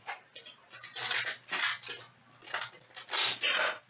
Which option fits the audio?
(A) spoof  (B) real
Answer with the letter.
B